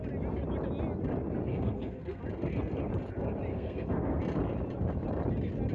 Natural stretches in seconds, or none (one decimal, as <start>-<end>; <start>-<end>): 0.0-1.5; 2.2-3.5; 4.2-5.7